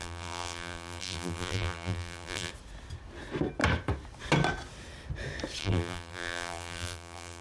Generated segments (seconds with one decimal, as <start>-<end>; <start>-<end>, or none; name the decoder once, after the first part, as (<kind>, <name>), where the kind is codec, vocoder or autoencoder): 0.0-2.5 (vocoder, BigVGAN v2); 5.6-7.4